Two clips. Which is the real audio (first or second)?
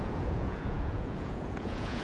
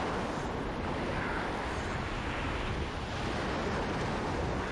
second